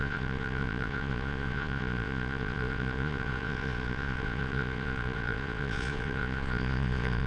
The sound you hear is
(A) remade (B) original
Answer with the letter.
A